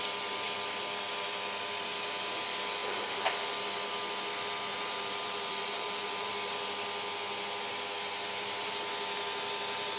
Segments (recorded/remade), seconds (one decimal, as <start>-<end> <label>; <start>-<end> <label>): 0.0-2.8 recorded; 2.8-3.3 remade; 3.3-4.7 recorded; 4.7-6.3 remade; 6.3-10.0 recorded